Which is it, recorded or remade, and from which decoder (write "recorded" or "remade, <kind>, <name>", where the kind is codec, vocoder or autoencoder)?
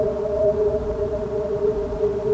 remade, vocoder, Vocos